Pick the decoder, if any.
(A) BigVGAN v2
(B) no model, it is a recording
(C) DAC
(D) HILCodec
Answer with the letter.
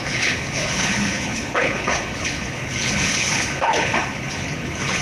D